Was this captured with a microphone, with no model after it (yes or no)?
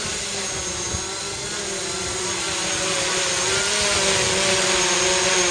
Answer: yes